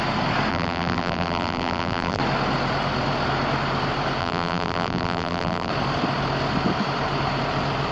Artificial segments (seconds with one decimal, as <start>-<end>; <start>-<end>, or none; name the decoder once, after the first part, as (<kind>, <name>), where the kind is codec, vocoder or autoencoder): 0.5-2.2 (vocoder, BigVGAN v2); 4.2-5.7